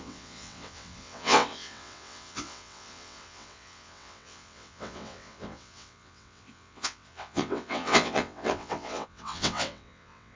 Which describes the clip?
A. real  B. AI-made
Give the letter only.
B